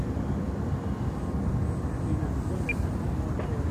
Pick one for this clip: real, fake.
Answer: real